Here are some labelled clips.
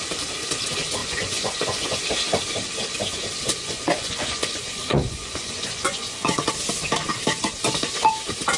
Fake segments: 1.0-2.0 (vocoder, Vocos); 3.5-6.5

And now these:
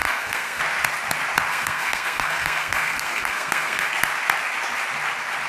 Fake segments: 0.0-0.6 (codec, SNAC); 1.5-3.9

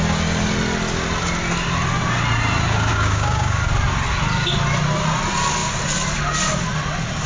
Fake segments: 2.9-3.6 (codec, DAC)

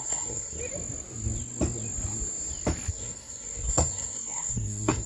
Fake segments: 0.0-0.6 (codec, SNAC); 2.9-5.1

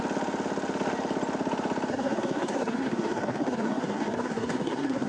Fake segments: 1.9-5.1 (codec, SNAC)

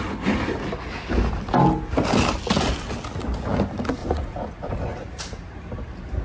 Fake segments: 4.0-5.2 (vocoder, Vocos)